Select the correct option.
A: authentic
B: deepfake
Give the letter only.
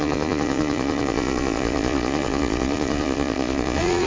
B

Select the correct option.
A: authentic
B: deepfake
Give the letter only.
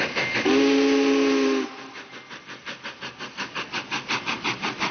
A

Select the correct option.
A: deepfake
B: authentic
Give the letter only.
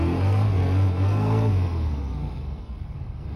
A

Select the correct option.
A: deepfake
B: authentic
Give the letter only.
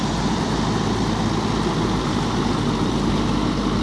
B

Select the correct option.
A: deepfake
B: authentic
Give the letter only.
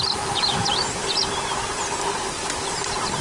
B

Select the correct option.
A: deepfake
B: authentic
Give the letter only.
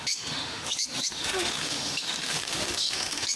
A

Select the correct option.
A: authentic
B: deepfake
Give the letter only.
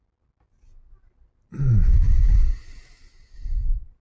A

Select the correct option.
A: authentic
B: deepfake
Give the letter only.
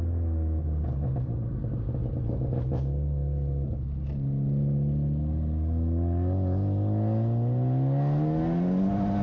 A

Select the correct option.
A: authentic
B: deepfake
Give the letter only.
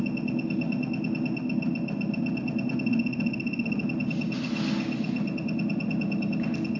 A